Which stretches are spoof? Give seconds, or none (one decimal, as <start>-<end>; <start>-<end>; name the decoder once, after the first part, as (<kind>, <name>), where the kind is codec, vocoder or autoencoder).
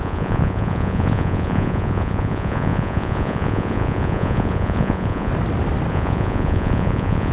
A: 0.0-5.3 (vocoder, Vocos); 5.9-7.3